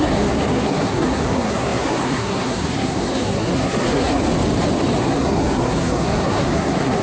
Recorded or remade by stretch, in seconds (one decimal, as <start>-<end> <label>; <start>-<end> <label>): 0.0-4.2 remade; 4.2-5.0 recorded; 5.0-7.0 remade